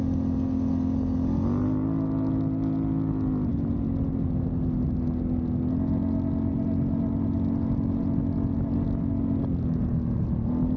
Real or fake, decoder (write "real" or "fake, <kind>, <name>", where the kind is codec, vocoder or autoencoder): real